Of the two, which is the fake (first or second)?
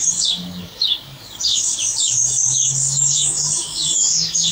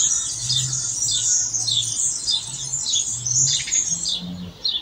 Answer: first